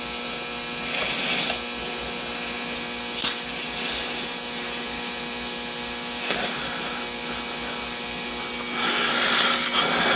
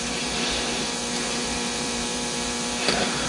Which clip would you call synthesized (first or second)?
second